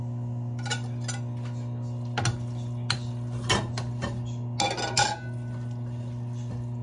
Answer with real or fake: real